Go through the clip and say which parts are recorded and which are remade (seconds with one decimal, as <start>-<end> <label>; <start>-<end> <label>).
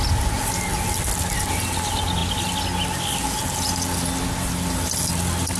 0.0-5.6 recorded